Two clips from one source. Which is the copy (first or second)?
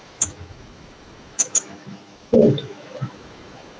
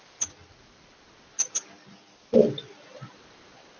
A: first